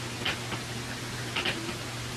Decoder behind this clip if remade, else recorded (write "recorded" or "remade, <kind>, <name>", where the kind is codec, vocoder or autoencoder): recorded